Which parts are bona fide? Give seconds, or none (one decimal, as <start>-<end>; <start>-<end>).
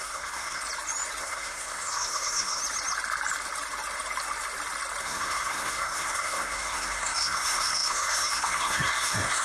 0.6-1.2; 2.6-5.0